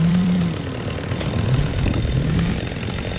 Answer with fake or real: fake